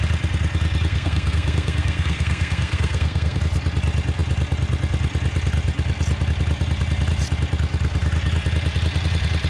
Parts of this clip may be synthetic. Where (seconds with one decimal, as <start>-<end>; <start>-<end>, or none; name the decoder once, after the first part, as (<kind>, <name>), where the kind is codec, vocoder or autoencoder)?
0.9-3.4 (codec, SNAC)